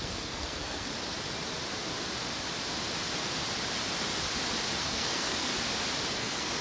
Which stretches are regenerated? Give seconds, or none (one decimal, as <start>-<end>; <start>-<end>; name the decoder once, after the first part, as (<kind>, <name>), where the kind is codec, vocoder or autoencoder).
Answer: 0.0-0.9 (codec, SNAC); 4.8-5.5; 6.1-6.6